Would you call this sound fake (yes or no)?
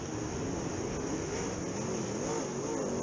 no